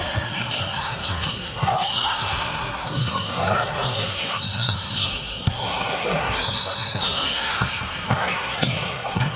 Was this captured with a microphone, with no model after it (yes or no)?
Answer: no